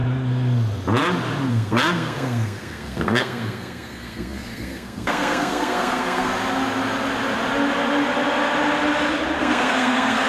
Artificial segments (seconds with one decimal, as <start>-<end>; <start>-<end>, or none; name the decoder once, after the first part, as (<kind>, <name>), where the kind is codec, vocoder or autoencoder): 1.5-6.3 (codec, SNAC); 9.4-10.3